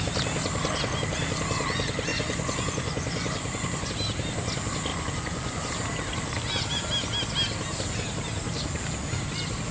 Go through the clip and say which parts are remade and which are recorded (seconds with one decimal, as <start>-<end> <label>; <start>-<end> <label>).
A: 0.0-2.1 recorded; 2.1-3.9 remade; 3.9-4.9 recorded; 4.9-5.7 remade; 5.7-9.7 recorded